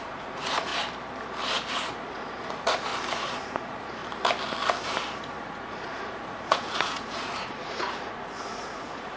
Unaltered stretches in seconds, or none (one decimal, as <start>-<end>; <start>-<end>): 0.7-1.7; 2.9-3.4; 4.0-5.4